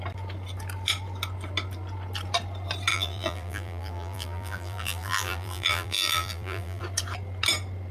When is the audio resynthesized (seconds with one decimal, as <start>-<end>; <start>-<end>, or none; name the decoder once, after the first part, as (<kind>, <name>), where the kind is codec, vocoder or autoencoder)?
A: 2.9-6.8 (vocoder, BigVGAN v2)

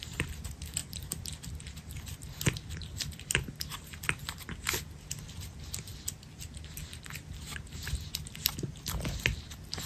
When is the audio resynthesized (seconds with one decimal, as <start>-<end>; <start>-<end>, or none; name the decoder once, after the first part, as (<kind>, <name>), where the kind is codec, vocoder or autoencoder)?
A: 0.0-5.9 (vocoder, BigVGAN v2); 8.9-9.9

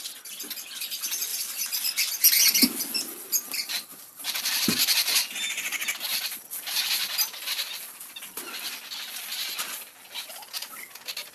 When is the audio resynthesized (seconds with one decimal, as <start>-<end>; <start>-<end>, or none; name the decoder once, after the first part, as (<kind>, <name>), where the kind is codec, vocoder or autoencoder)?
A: 1.3-2.0 (vocoder, BigVGAN v2); 3.9-4.5

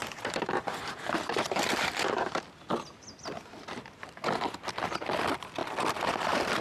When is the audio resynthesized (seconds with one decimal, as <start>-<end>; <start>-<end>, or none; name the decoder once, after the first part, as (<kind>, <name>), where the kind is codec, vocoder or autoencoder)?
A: 0.0-2.4 (vocoder, BigVGAN v2)

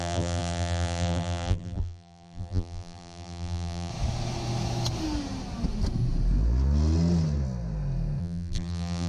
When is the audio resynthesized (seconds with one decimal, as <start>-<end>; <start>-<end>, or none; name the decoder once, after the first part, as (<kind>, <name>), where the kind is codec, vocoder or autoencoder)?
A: 0.0-3.9 (vocoder, BigVGAN v2); 8.2-9.1